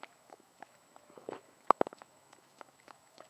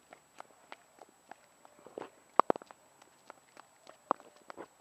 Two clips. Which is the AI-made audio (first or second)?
first